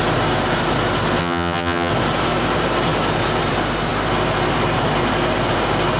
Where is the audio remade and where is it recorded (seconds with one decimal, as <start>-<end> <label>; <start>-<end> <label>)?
0.0-1.2 recorded; 1.2-1.9 remade; 1.9-6.0 recorded